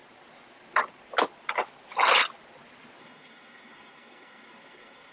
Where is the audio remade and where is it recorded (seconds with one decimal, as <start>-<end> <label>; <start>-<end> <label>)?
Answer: 0.0-3.0 recorded; 3.0-5.1 remade